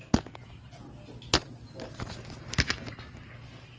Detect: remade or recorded recorded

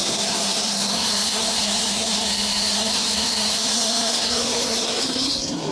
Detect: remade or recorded remade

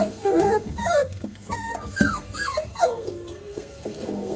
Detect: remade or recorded remade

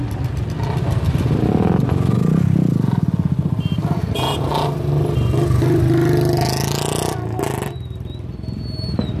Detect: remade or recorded recorded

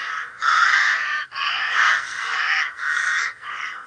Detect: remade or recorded remade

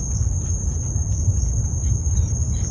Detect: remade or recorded recorded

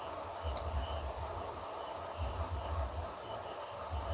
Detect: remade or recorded recorded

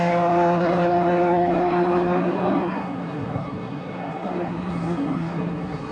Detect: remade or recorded remade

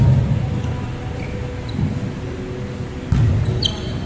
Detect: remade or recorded recorded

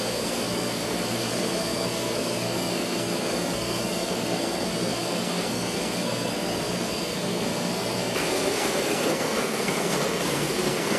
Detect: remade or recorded remade